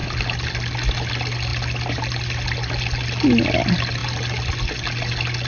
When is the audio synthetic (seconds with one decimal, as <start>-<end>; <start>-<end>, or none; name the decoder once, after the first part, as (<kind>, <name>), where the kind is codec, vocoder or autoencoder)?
none